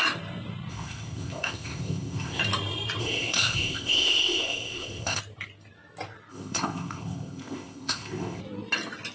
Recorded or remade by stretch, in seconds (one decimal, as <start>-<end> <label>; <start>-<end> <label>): 0.0-0.7 recorded; 0.7-2.4 remade; 2.4-3.0 recorded; 3.0-5.2 remade; 5.2-6.3 recorded; 6.3-8.4 remade; 8.4-9.1 recorded